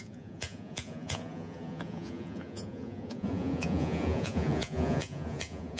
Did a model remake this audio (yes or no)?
yes